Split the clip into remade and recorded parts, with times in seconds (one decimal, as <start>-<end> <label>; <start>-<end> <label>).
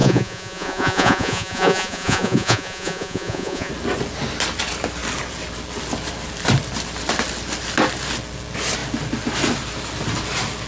0.0-3.7 remade; 3.7-10.7 recorded